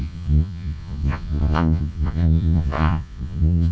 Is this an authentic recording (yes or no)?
no